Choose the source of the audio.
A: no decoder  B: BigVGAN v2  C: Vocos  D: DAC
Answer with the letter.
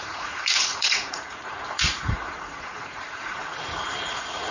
C